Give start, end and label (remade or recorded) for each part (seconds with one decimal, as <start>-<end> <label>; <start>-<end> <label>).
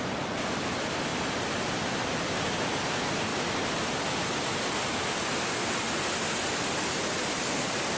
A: 0.0-8.0 recorded